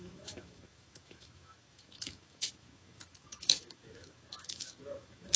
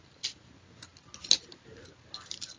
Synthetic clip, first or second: first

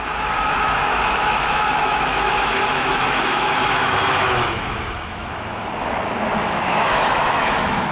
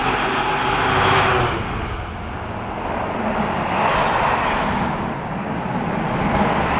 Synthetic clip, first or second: first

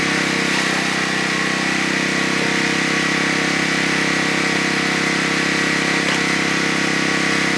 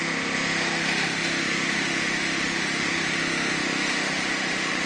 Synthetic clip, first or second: second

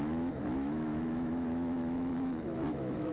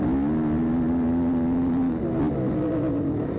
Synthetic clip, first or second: first